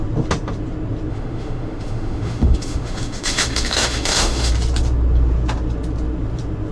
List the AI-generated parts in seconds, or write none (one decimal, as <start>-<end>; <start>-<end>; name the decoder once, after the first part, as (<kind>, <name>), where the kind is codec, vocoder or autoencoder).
1.1-4.5 (autoencoder, DAC-VAE)